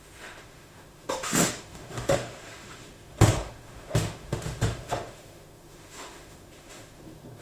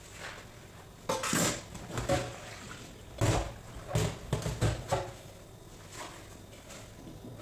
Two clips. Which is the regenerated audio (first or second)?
first